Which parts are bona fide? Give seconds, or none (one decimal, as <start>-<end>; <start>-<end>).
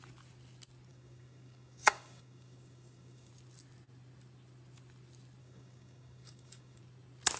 0.0-0.9; 3.3-5.4; 6.8-7.4